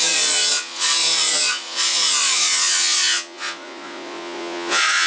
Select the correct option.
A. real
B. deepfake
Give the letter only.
B